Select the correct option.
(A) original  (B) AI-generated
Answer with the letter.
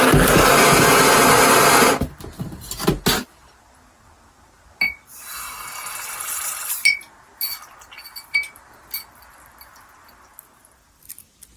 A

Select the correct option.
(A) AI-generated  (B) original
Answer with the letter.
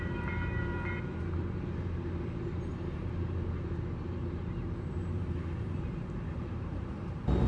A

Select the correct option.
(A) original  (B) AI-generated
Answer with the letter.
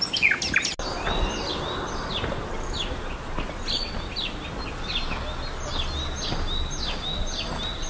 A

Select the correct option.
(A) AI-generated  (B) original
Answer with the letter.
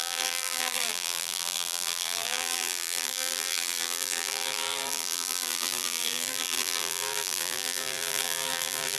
A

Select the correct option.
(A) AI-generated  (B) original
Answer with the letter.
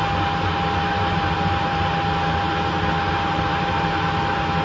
B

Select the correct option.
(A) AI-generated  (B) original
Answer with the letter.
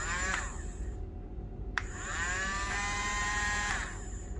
A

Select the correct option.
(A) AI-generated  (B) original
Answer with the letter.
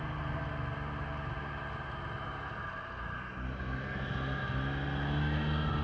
B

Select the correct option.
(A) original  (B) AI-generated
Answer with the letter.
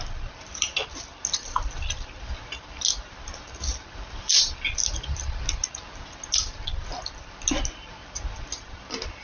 A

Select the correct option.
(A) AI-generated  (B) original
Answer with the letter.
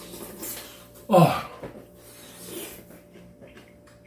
B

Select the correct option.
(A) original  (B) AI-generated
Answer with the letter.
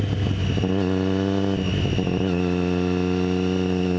A